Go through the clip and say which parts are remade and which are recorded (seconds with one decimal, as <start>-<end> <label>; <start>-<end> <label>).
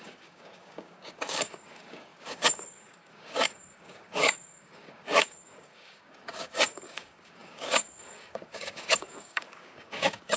0.0-10.4 remade